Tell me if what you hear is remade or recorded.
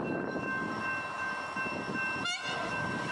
recorded